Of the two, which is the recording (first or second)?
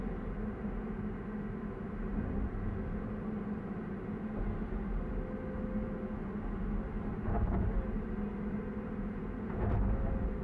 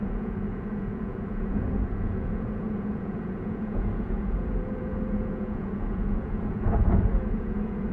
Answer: first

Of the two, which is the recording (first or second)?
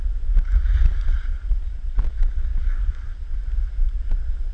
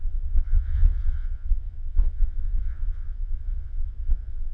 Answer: first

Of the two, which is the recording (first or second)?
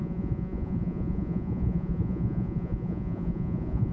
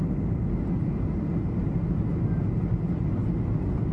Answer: second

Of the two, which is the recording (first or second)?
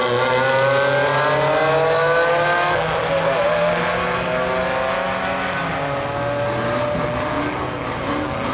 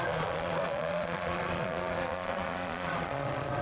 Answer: first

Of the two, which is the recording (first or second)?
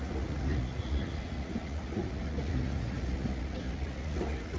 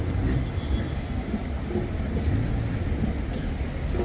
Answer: second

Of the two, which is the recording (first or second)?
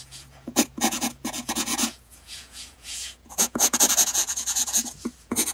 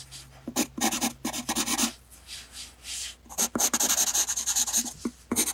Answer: second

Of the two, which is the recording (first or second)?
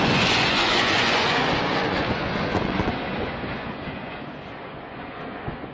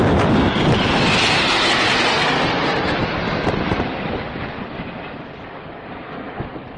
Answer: second